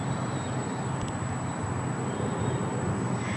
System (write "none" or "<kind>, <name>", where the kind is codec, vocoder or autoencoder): none